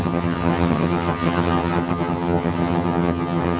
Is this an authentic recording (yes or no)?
no